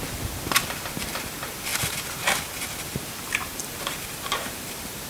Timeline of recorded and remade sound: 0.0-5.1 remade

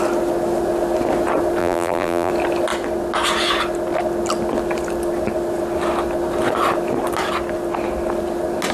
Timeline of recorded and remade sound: 0.0-1.6 recorded; 1.6-2.3 remade; 2.3-8.7 recorded

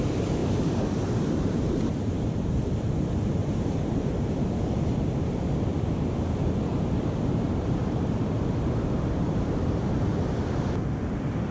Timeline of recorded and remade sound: 0.0-0.4 recorded; 0.4-2.5 remade; 2.5-3.4 recorded; 3.4-4.6 remade; 4.6-6.7 recorded; 6.7-8.4 remade; 8.4-11.5 recorded

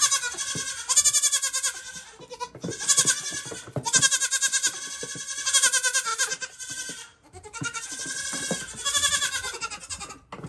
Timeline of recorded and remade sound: 0.0-6.1 recorded; 6.1-8.6 remade; 8.6-10.5 recorded